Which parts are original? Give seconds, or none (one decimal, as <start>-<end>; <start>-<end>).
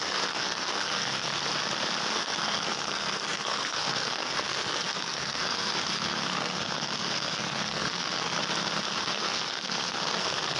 1.4-2.1; 8.4-9.0